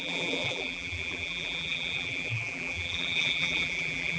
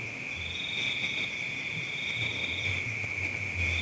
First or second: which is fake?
first